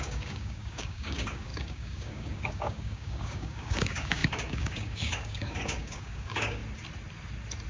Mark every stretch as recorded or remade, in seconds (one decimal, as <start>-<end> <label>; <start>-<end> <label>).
0.0-6.6 remade; 6.6-7.7 recorded